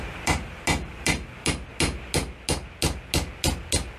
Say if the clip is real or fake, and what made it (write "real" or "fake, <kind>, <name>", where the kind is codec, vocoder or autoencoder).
real